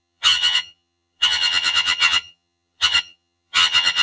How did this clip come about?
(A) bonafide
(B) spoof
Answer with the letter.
B